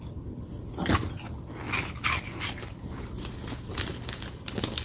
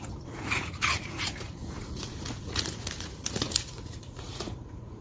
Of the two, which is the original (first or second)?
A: first